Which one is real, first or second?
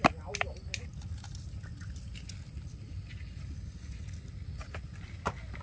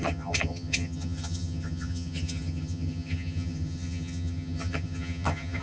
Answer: first